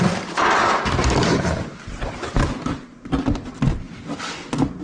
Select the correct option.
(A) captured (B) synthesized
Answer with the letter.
B